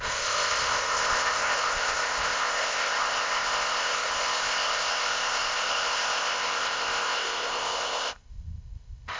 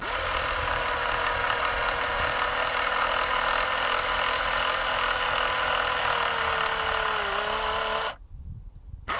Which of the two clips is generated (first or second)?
first